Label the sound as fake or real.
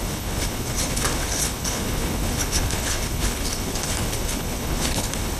fake